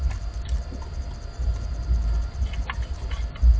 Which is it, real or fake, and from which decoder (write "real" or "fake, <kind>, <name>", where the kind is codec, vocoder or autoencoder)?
fake, vocoder, BigVGAN v2